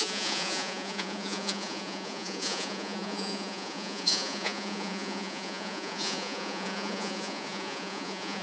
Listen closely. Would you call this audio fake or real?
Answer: fake